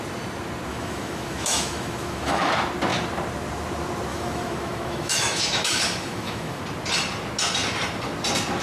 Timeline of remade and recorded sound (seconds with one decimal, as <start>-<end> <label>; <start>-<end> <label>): 0.0-0.7 recorded; 0.7-2.5 remade; 2.5-4.1 recorded; 4.1-6.6 remade; 6.6-8.6 recorded